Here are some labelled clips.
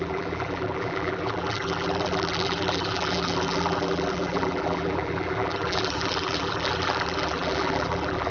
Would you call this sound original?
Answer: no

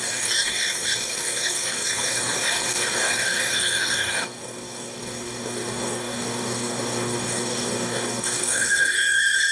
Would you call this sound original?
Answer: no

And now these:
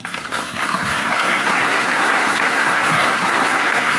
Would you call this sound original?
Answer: no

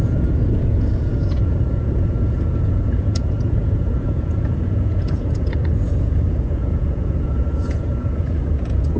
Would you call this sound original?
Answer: no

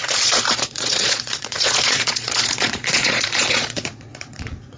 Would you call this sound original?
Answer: no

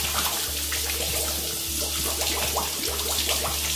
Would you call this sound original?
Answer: yes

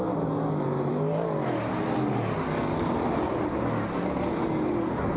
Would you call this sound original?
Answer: yes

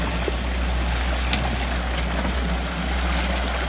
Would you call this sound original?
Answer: yes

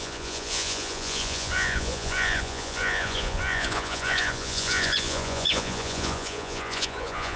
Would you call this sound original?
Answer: no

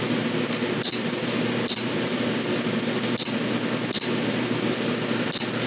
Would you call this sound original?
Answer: yes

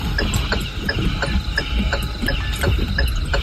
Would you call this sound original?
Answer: yes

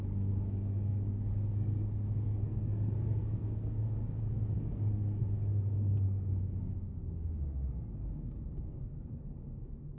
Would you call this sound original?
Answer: no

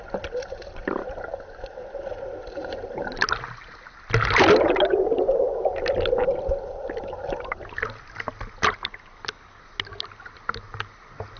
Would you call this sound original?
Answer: yes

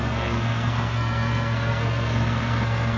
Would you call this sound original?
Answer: no